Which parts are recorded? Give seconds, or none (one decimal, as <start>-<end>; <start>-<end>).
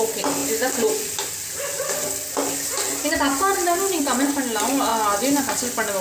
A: 0.0-6.0